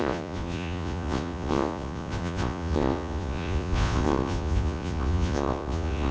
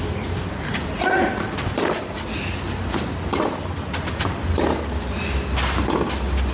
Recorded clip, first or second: second